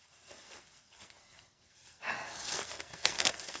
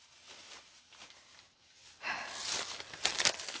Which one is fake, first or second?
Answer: first